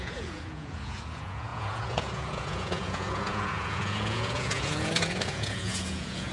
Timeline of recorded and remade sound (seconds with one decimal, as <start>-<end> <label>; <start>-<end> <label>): 0.0-6.3 remade